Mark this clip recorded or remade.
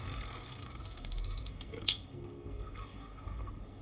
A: remade